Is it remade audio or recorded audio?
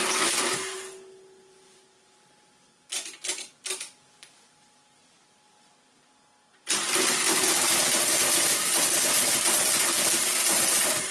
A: recorded